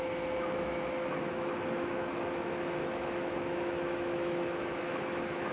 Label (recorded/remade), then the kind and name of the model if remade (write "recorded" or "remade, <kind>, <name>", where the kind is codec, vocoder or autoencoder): remade, autoencoder, DAC-VAE